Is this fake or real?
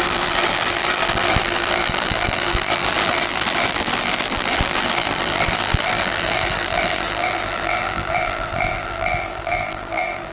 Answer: fake